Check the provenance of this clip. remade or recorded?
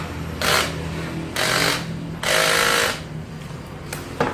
recorded